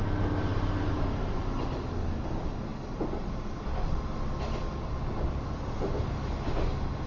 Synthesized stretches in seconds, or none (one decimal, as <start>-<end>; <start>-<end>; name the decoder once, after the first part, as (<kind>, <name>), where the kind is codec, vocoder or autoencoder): none